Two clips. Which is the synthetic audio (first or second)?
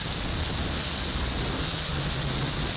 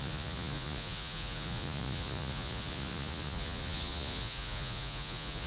second